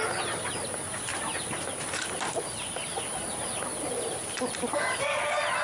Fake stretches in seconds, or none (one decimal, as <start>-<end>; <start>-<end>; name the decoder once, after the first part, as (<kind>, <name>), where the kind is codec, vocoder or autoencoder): none